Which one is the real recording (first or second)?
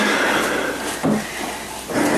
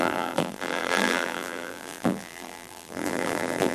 first